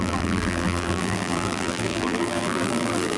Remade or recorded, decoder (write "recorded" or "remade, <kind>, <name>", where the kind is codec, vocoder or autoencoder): remade, vocoder, BigVGAN v2